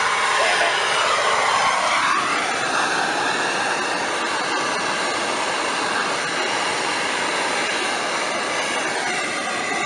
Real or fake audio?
real